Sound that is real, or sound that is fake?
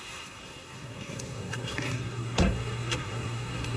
fake